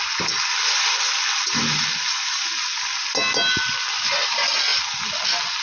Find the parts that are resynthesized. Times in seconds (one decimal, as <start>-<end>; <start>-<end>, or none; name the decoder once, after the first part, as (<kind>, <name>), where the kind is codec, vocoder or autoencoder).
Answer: none